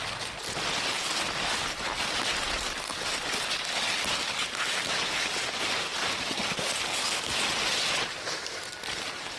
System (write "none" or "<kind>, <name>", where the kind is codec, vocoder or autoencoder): none